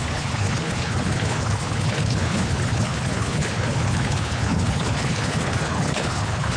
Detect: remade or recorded remade